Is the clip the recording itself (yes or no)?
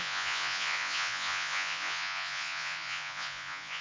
no